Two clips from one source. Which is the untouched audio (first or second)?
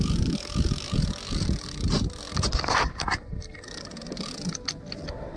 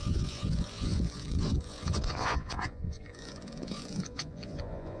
first